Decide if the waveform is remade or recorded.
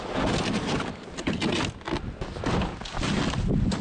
recorded